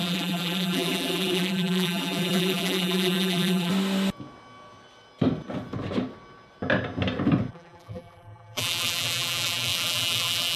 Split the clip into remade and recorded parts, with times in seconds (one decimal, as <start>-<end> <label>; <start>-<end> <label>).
0.0-3.7 remade; 3.7-7.5 recorded; 7.5-10.6 remade